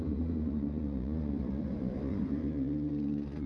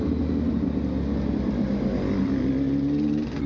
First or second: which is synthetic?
first